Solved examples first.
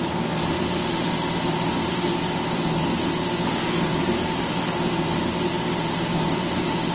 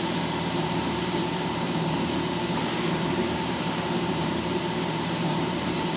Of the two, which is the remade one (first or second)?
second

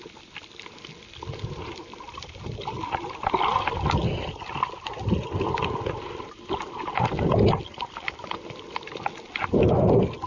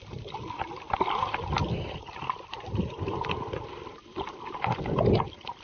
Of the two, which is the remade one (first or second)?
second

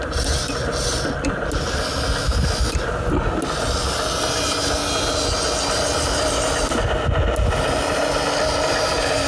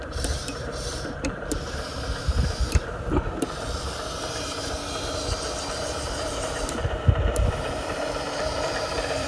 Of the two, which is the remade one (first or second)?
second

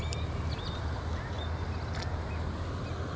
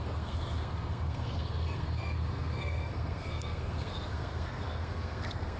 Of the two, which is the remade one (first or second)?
second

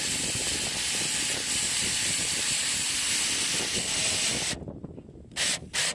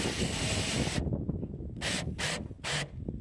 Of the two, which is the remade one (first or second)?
first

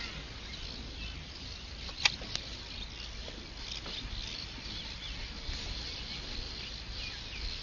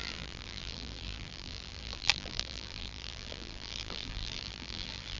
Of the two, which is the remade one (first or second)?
second